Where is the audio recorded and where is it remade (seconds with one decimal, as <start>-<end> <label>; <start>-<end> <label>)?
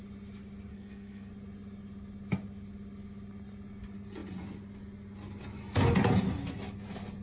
0.0-0.7 recorded; 0.7-1.3 remade; 1.3-7.2 recorded